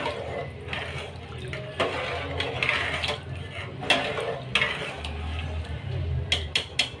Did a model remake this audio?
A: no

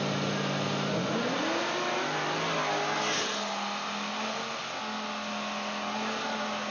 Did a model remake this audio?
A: no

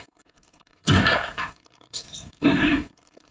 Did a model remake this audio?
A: yes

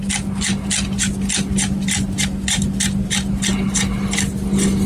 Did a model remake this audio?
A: no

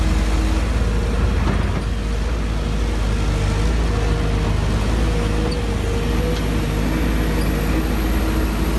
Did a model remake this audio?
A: no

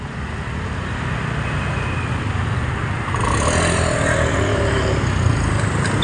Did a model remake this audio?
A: no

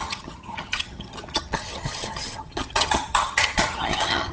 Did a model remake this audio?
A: yes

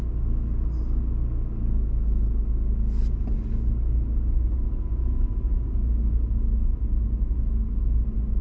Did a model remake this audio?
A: no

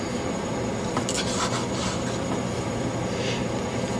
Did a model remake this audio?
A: no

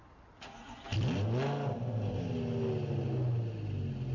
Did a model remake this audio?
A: no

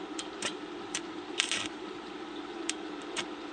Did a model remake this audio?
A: yes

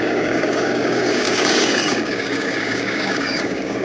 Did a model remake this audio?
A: yes